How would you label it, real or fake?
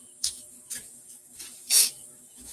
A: fake